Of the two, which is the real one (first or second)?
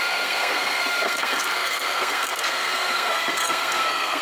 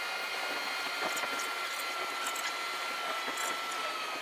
second